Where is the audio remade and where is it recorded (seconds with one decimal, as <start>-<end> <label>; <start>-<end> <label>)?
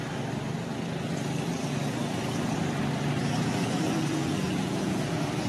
0.0-3.2 recorded; 3.2-5.5 remade